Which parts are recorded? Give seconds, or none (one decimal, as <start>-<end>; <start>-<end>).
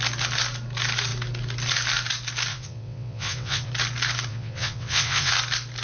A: 0.0-2.5; 3.7-4.3; 5.3-5.8